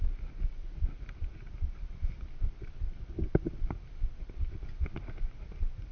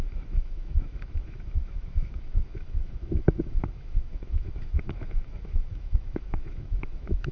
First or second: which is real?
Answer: first